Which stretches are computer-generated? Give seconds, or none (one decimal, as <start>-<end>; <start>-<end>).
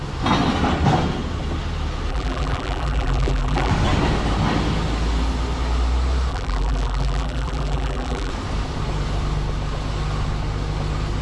2.1-3.7; 6.3-8.3